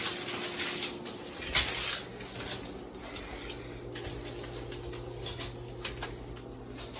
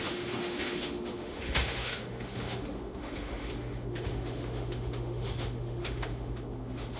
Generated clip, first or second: second